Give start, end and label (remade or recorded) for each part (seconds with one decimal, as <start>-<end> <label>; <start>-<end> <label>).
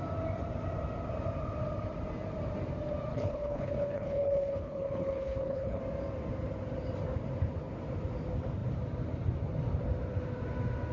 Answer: 0.0-3.1 recorded; 3.1-5.8 remade; 5.8-10.9 recorded